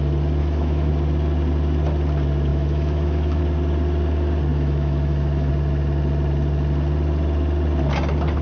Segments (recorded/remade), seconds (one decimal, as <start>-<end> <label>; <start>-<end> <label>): 0.0-0.4 recorded; 0.4-0.9 remade; 0.9-2.5 recorded; 2.5-3.4 remade; 3.4-4.5 recorded; 4.5-5.5 remade; 5.5-8.4 recorded